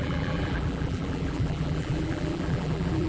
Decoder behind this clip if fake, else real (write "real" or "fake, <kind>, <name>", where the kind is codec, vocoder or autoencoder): fake, vocoder, BigVGAN v2